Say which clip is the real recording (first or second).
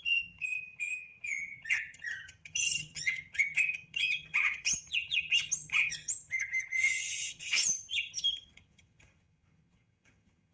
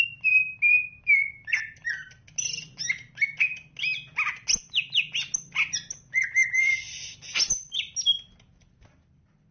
second